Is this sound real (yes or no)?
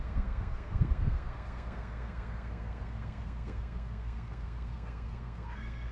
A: no